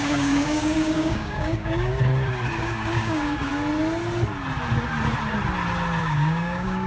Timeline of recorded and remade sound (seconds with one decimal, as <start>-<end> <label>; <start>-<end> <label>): 0.0-1.9 remade; 1.9-2.6 recorded; 2.6-3.5 remade; 3.5-6.0 recorded; 6.0-6.9 remade